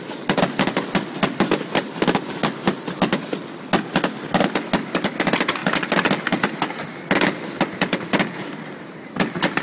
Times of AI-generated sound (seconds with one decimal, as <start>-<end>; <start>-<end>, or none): none